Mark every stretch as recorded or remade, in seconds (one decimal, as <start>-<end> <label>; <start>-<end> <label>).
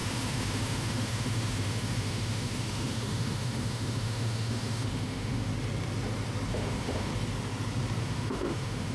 0.0-5.5 remade; 5.5-6.5 recorded; 6.5-7.1 remade; 7.1-8.0 recorded; 8.0-8.9 remade